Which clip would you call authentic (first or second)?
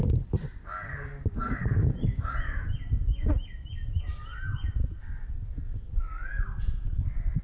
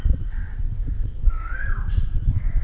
first